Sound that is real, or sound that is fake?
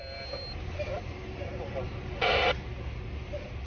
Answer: real